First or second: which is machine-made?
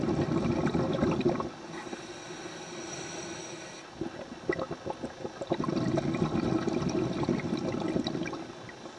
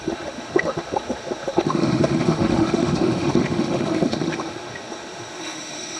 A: second